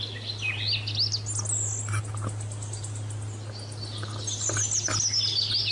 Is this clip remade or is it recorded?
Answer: recorded